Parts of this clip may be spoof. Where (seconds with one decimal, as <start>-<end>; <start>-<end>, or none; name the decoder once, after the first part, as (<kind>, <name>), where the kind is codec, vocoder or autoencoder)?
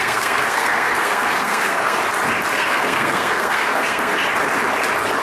0.0-2.0 (codec, SNAC); 2.5-4.1